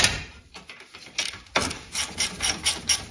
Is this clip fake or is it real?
fake